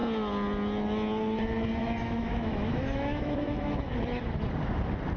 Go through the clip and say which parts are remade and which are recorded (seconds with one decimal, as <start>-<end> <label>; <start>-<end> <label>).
0.0-1.8 recorded; 1.8-3.9 remade; 3.9-5.2 recorded